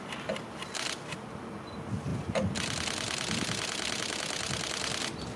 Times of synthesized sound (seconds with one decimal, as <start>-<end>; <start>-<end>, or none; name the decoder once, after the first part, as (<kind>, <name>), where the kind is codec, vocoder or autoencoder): none